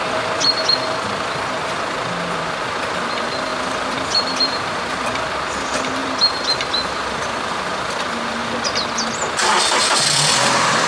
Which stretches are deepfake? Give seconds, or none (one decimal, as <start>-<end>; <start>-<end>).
3.5-5.3; 6.0-8.0